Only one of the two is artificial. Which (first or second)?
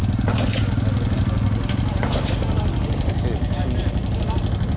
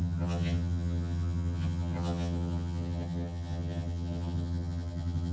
second